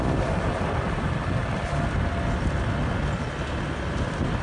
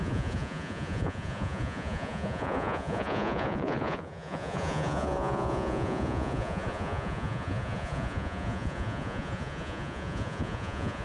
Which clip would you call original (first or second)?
first